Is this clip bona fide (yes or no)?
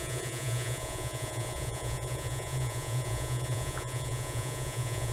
no